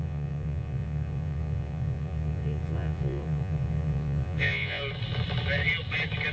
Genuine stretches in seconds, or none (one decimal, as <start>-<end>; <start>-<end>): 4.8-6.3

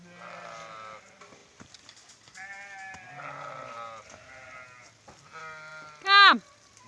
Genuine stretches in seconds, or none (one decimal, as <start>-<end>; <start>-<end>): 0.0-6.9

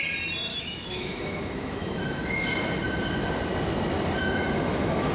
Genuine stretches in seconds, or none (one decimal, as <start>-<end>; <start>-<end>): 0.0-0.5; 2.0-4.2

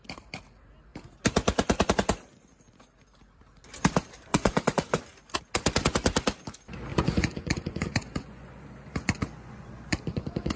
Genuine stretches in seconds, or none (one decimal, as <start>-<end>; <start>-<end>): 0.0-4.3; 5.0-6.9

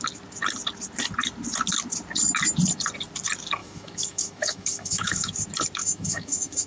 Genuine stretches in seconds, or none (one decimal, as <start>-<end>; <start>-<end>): 0.0-3.6; 5.3-5.8

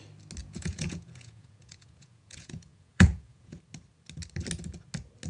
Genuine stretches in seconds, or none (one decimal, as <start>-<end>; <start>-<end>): 0.0-0.4; 3.6-5.3

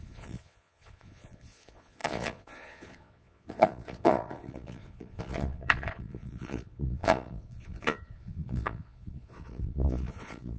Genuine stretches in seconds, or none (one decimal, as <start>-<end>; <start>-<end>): none